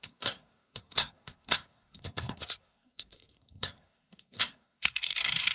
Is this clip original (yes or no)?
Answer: no